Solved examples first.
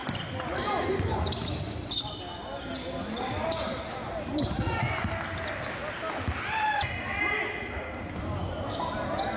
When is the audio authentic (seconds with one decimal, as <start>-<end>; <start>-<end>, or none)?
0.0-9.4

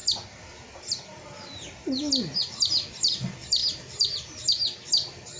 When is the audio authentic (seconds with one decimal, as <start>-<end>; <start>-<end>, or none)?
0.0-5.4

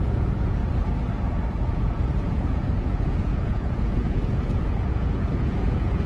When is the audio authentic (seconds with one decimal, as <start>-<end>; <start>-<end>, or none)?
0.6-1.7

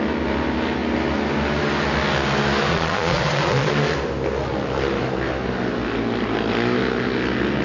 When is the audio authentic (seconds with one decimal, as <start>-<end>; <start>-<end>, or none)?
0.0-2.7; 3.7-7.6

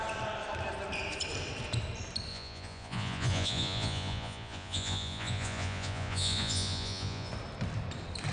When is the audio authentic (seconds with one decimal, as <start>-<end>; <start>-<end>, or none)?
0.0-2.3; 7.3-8.3

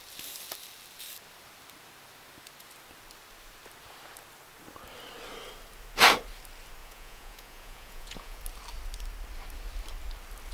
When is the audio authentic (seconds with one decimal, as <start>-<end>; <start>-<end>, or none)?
0.0-6.8; 8.4-10.5